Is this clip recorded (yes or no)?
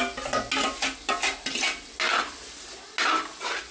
yes